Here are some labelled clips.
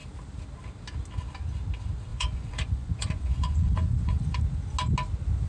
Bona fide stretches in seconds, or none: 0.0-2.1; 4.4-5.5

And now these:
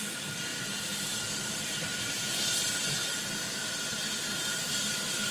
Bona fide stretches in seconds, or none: 0.0-5.3